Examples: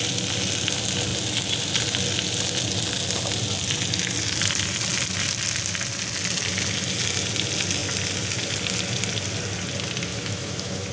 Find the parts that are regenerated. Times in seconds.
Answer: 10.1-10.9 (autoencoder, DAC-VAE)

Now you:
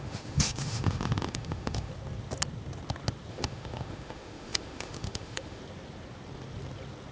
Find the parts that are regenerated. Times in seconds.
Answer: 0.0-1.9 (autoencoder, DAC-VAE); 3.3-5.6

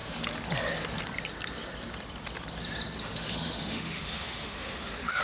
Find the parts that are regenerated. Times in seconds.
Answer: 3.0-5.2 (autoencoder, DAC-VAE)

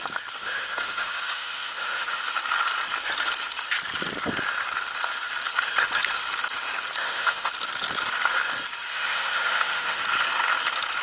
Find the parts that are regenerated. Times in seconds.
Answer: 0.4-2.2 (autoencoder, DAC-VAE); 7.0-7.5; 8.9-10.0

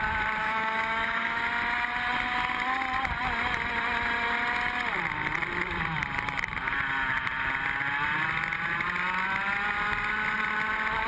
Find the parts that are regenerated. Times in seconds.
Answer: 0.4-1.4 (autoencoder, DAC-VAE)

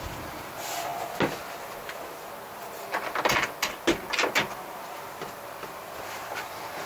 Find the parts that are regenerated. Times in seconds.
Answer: none

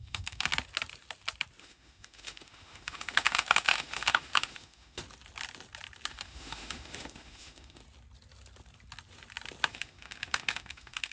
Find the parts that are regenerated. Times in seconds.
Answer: 0.0-0.5 (autoencoder, DAC-VAE); 1.6-5.0; 6.1-7.8; 9.7-11.1